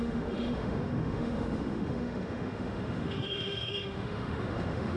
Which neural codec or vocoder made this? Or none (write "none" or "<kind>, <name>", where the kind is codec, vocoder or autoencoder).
autoencoder, DAC-VAE